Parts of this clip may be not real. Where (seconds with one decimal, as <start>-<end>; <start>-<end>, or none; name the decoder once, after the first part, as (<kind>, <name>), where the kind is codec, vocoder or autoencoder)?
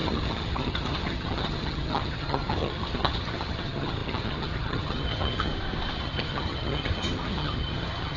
0.0-5.5 (vocoder, HiFi-GAN); 6.0-8.2